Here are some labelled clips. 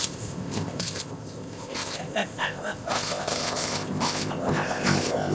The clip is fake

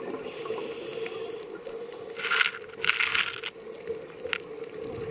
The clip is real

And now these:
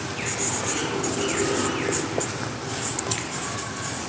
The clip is real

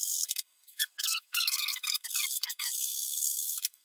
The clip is fake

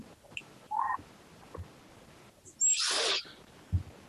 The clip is real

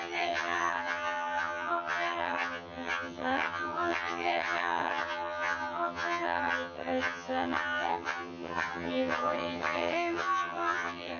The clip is fake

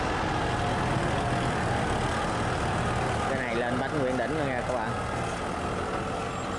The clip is real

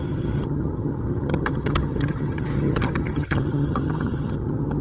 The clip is fake